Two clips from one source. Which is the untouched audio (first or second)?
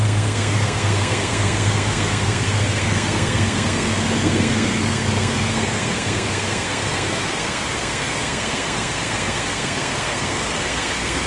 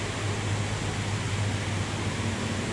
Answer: second